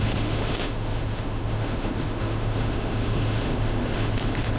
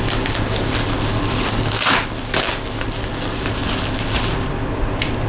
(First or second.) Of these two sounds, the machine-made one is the first